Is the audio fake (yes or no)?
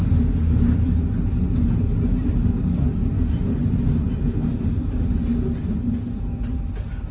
no